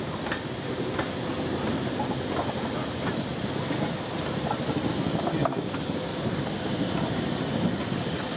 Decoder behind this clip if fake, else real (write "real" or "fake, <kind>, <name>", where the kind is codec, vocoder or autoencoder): real